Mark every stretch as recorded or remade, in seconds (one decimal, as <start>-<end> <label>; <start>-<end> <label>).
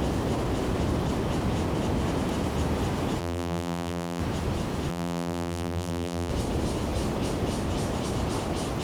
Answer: 0.0-3.2 recorded; 3.2-4.2 remade; 4.2-4.9 recorded; 4.9-6.3 remade; 6.3-8.8 recorded